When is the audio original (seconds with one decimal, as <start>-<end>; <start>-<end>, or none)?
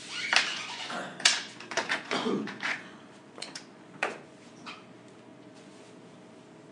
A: 0.0-0.5; 4.5-5.3; 5.9-6.7